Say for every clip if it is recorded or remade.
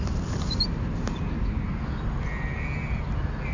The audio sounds recorded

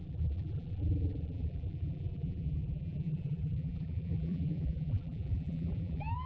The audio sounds remade